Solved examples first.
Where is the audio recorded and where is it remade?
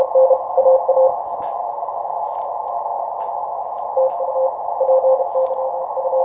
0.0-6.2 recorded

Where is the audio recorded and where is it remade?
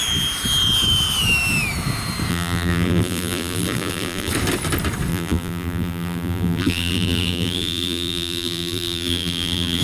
0.0-2.3 recorded; 2.3-4.3 remade; 4.3-5.1 recorded; 5.1-9.8 remade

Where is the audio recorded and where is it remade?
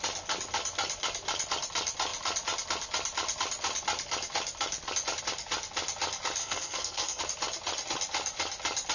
0.0-6.4 recorded; 6.4-7.2 remade; 7.2-8.9 recorded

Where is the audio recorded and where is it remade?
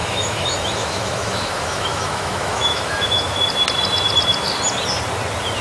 0.0-3.4 remade; 3.4-5.6 recorded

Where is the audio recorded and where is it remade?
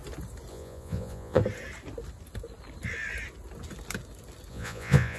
0.0-0.5 recorded; 0.5-1.4 remade; 1.4-4.5 recorded; 4.5-5.2 remade